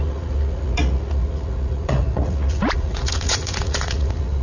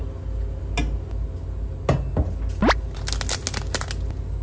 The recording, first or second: second